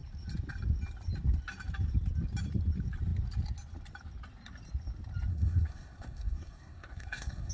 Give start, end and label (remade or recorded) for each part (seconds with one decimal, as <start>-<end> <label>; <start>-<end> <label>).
0.0-5.3 recorded; 5.3-7.5 remade